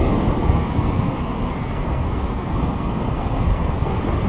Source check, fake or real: fake